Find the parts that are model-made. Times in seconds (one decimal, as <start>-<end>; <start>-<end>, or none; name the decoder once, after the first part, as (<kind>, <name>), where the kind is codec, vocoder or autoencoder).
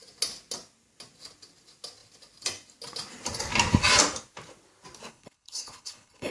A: 5.1-6.3 (codec, HILCodec)